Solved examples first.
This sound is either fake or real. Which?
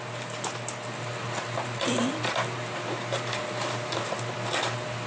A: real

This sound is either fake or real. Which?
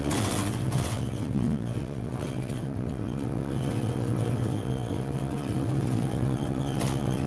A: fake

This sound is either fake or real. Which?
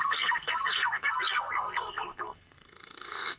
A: fake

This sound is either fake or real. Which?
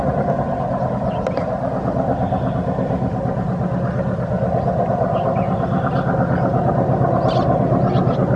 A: real